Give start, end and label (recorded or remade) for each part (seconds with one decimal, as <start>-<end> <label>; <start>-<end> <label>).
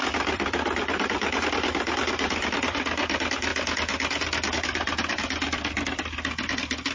0.0-3.5 remade; 3.5-5.1 recorded; 5.1-6.9 remade